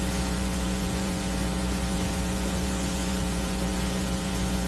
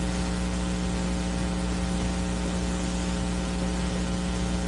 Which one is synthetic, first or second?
first